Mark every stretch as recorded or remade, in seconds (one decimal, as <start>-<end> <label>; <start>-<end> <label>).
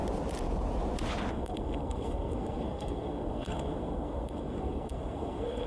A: 0.0-1.3 recorded; 1.3-5.7 remade